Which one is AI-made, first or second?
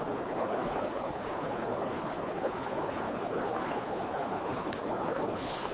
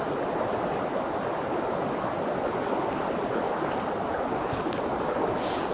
first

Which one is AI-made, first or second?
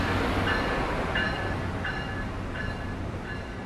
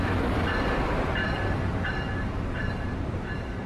second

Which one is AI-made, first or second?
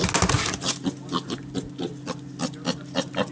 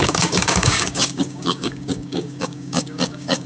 second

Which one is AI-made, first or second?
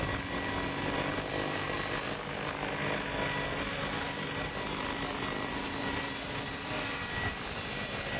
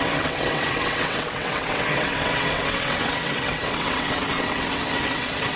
second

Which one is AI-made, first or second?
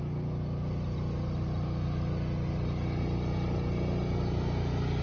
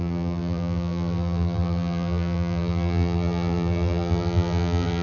second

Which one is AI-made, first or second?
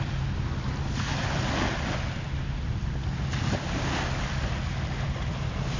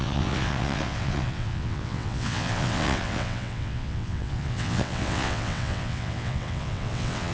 second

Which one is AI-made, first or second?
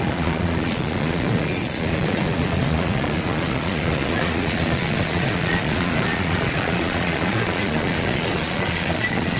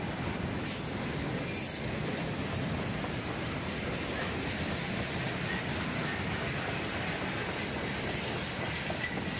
first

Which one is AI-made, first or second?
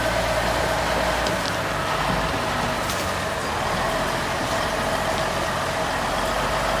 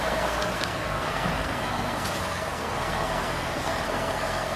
second